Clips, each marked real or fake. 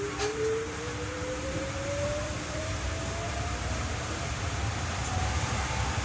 fake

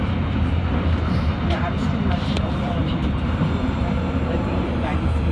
fake